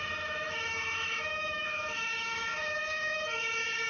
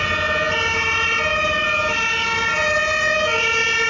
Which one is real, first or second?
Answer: second